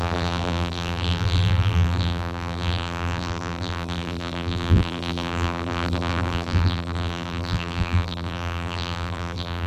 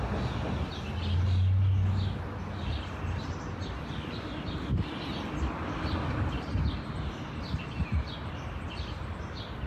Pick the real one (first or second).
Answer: second